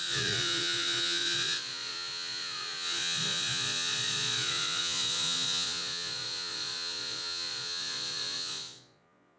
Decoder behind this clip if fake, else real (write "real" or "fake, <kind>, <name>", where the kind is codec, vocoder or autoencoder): fake, vocoder, Vocos